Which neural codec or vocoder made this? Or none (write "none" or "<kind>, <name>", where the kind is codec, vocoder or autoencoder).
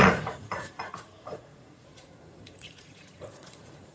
vocoder, Vocos